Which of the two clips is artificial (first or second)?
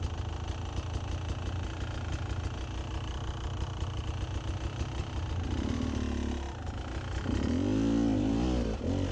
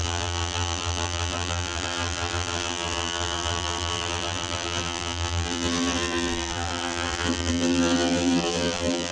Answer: second